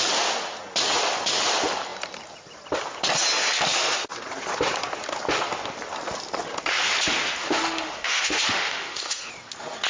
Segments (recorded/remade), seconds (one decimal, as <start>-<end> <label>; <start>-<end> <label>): 0.0-7.4 recorded; 7.4-9.3 remade; 9.3-9.9 recorded